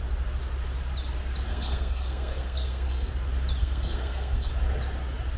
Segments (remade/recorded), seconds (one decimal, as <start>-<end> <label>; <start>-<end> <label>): 0.0-1.5 recorded; 1.5-3.1 remade; 3.1-3.6 recorded; 3.6-4.5 remade; 4.5-5.4 recorded